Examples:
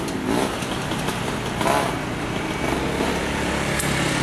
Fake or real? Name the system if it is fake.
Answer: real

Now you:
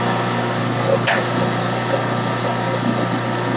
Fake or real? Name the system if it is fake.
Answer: real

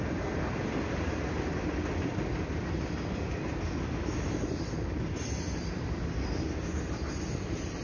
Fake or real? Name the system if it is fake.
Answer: real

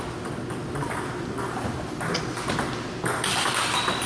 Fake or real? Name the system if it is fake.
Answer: real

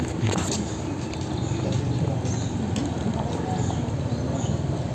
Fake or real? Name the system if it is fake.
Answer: real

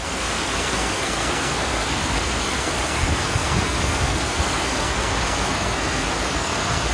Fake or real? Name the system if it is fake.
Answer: fake, codec, SNAC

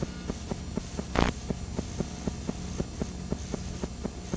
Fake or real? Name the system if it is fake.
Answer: real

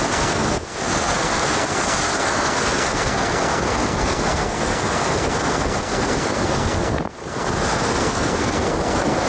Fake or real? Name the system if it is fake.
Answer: fake, codec, SNAC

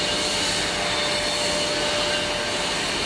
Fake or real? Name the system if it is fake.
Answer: real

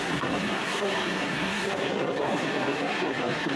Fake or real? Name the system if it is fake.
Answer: fake, codec, SNAC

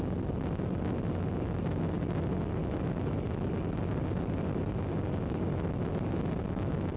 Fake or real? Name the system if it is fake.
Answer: real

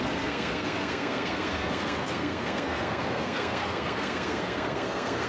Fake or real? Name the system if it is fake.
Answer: fake, codec, SNAC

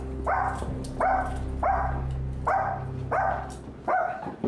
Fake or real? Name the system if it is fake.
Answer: real